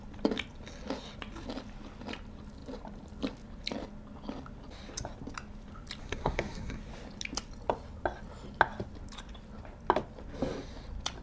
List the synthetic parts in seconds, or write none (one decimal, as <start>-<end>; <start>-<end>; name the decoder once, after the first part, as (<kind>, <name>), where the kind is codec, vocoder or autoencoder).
6.0-6.8 (codec, SNAC)